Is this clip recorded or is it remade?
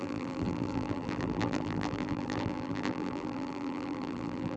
remade